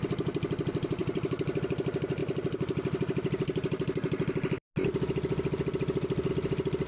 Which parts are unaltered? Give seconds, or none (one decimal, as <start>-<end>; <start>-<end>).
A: 0.0-1.0; 1.6-6.9